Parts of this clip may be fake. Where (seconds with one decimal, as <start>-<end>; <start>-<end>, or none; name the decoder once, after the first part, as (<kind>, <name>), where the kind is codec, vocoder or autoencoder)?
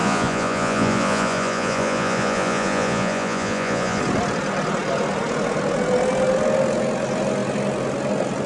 0.0-4.0 (vocoder, Vocos)